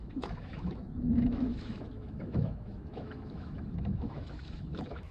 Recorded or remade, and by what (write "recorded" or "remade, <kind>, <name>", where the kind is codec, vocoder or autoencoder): remade, autoencoder, DAC-VAE